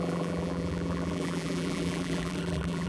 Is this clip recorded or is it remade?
remade